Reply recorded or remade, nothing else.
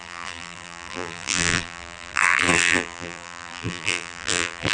remade